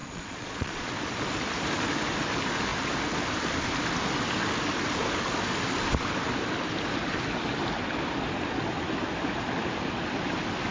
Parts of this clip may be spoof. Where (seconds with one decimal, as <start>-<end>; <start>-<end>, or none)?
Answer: 0.0-0.9